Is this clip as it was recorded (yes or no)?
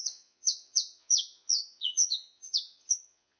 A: no